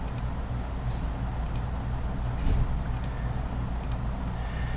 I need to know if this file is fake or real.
real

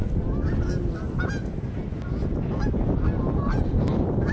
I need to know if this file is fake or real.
real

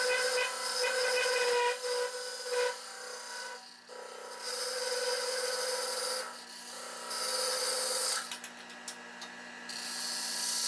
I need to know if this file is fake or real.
real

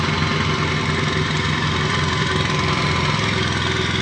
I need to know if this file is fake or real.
real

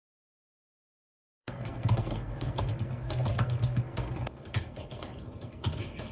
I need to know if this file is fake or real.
fake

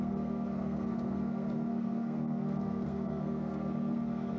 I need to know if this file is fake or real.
fake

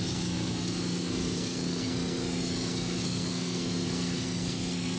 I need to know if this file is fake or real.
fake